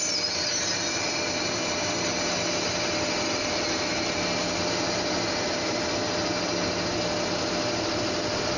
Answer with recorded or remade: recorded